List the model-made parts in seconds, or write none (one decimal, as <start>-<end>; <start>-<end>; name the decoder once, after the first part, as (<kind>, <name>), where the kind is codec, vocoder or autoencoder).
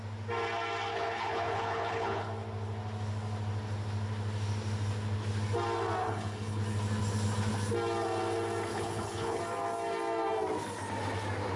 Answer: 0.9-2.3 (codec, HILCodec); 6.0-6.6; 8.7-9.4